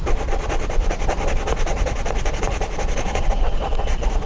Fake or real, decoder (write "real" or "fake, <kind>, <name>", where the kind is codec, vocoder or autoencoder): fake, vocoder, Vocos